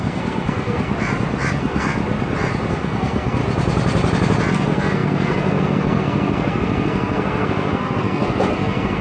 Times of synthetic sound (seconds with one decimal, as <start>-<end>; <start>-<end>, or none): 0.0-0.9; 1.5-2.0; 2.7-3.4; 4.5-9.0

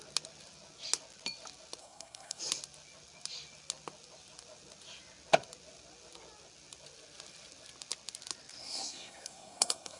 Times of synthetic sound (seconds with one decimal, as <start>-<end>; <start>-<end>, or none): 1.8-2.4; 8.6-10.0

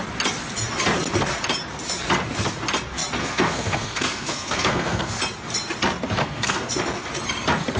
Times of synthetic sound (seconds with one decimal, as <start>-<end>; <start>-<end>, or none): 3.2-5.2; 6.2-6.7